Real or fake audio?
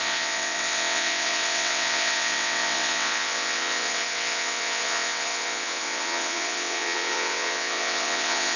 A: fake